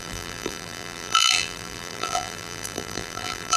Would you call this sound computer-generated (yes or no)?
yes